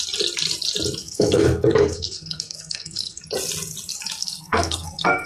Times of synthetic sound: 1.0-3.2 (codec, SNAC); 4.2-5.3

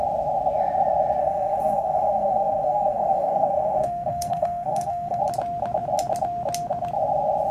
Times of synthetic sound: 1.2-5.2 (codec, SNAC)

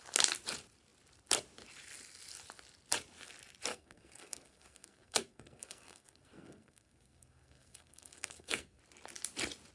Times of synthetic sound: 3.7-8.8 (codec, SNAC)

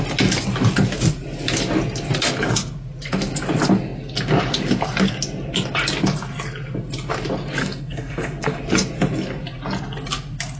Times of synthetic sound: 7.6-8.6 (codec, SNAC)

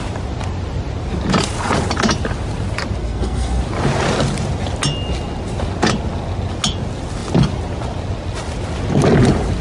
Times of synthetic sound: 3.0-3.6 (codec, SNAC)

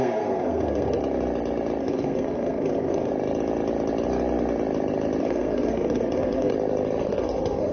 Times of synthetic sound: 0.0-1.0 (codec, SNAC); 1.8-3.1; 5.2-6.5; 7.0-7.7

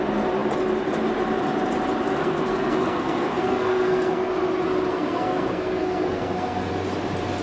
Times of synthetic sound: 2.1-4.3 (codec, SNAC); 4.9-6.7

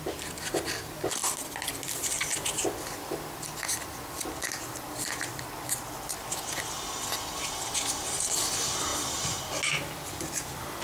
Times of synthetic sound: none